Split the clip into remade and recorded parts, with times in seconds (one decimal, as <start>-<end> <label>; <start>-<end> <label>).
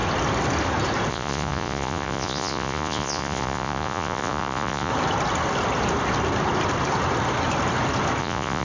0.0-1.1 recorded; 1.1-4.9 remade; 4.9-8.2 recorded; 8.2-8.6 remade